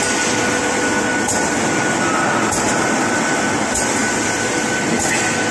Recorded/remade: recorded